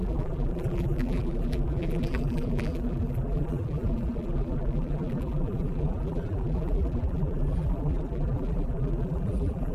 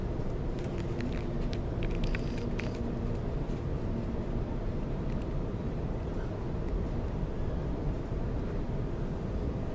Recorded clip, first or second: second